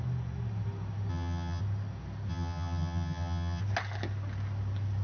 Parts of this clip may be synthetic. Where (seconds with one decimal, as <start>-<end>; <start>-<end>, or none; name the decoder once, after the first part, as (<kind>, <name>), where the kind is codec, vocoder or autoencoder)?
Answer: 1.1-1.6 (vocoder, HiFi-GAN); 2.3-3.6